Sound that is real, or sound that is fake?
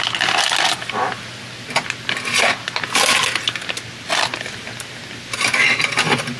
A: real